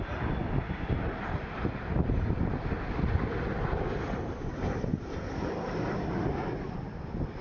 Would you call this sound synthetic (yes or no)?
no